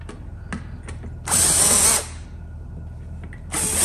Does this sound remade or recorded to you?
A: recorded